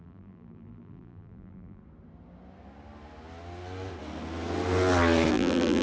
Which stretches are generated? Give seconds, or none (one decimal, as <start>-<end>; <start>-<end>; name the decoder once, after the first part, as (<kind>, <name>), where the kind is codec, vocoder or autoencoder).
0.0-1.8 (vocoder, BigVGAN v2); 5.3-5.8